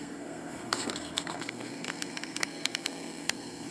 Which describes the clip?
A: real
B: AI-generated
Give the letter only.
B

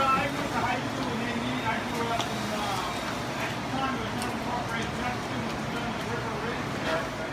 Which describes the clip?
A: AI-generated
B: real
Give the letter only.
B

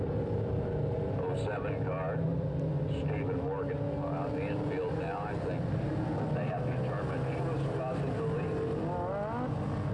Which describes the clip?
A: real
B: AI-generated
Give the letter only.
A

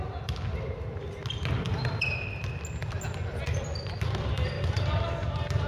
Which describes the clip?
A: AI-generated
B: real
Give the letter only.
B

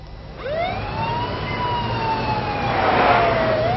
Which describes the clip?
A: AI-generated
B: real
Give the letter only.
B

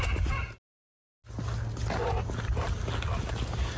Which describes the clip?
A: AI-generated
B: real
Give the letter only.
B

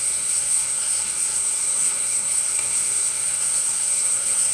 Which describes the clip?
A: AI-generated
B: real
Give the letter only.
A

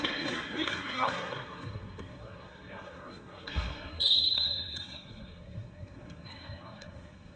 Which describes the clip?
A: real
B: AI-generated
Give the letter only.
B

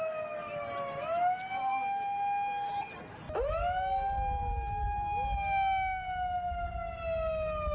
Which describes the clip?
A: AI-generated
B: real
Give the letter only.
B